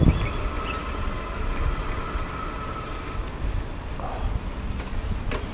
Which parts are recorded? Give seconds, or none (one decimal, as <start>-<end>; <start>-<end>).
0.0-5.5